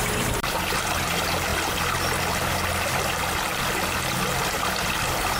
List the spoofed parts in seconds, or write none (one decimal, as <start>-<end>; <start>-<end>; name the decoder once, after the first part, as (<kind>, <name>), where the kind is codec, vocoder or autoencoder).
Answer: none